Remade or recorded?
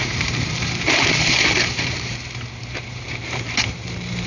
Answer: remade